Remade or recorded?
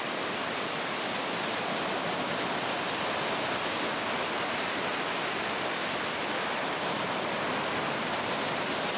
recorded